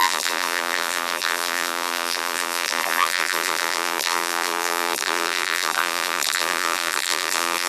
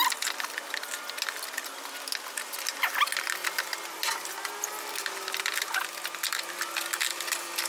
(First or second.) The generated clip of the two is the first